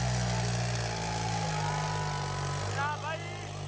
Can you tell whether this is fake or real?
real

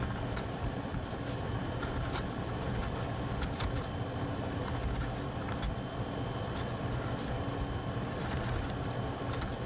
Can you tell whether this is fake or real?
real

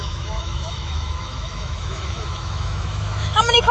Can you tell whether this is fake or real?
fake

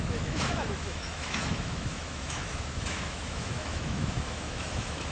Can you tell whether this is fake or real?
fake